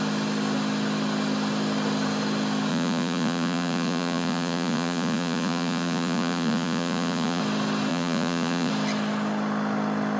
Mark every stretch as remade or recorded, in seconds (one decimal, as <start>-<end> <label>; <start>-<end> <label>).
0.0-2.7 recorded; 2.7-7.4 remade; 7.4-7.9 recorded; 7.9-8.7 remade; 8.7-10.2 recorded